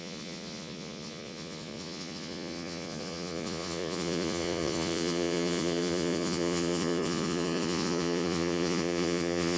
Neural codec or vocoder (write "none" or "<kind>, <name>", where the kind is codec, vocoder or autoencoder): vocoder, Vocos